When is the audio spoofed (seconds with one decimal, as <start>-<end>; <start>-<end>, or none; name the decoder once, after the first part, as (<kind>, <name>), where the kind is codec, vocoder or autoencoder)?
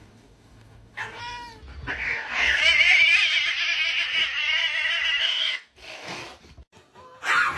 0.0-1.2 (codec, DAC); 1.9-2.6; 5.2-6.2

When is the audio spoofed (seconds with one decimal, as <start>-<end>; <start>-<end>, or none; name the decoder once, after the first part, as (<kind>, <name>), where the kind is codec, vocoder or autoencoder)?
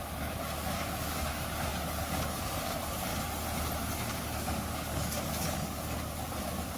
0.0-3.1 (codec, DAC); 3.8-6.8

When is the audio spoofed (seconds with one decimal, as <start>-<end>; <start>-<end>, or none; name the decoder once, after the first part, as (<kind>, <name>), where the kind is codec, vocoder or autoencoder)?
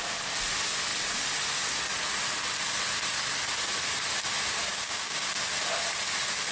4.7-5.3 (codec, DAC)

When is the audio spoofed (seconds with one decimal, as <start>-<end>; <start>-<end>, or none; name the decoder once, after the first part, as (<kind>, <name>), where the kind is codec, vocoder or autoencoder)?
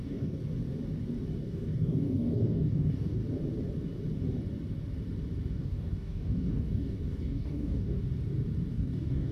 0.0-0.4 (codec, DAC); 1.4-3.2; 5.5-8.0; 8.7-9.3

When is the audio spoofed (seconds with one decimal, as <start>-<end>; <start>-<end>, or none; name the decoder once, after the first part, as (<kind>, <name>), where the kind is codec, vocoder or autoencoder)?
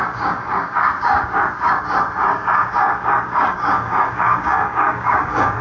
0.0-1.8 (codec, DAC); 2.3-5.6